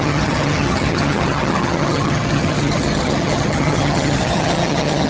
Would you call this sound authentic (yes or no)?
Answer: no